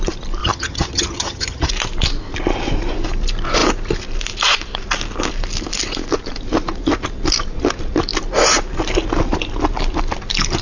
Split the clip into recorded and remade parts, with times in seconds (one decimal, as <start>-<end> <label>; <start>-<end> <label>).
0.0-0.4 recorded; 0.4-1.7 remade; 1.7-10.6 recorded